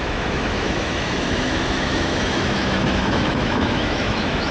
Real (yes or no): no